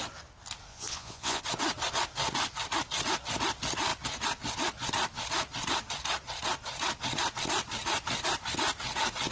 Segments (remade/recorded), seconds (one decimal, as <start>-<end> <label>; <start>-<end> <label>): 0.0-0.7 recorded; 0.7-1.4 remade; 1.4-9.3 recorded